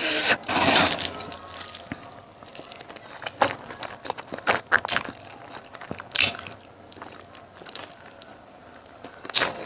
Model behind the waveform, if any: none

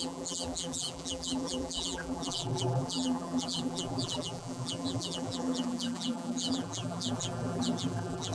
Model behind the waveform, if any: vocoder, BigVGAN v2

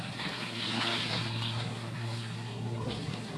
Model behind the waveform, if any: codec, SNAC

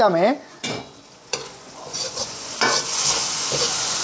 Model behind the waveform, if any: vocoder, Vocos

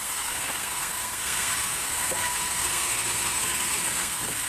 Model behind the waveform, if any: codec, SNAC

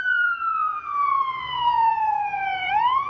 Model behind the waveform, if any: vocoder, Vocos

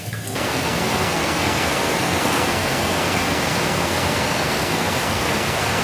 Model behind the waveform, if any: codec, SNAC